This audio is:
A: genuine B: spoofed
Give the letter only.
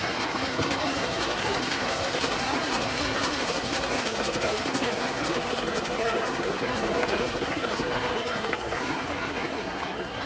B